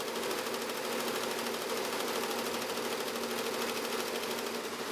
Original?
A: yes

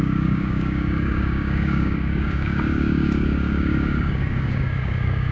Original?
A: no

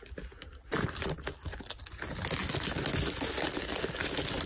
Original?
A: yes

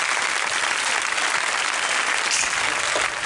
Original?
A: yes